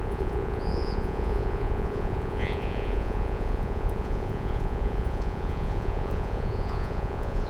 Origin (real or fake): fake